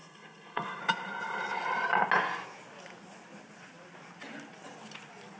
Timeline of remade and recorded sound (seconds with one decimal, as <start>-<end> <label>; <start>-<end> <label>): 0.0-0.8 remade; 0.8-5.4 recorded